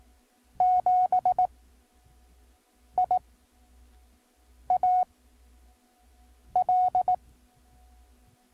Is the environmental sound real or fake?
real